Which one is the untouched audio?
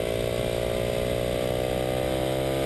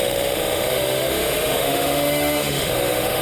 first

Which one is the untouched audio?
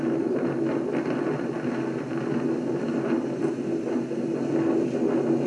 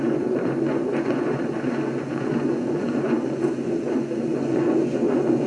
first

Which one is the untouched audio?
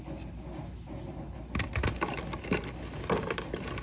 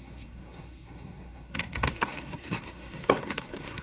first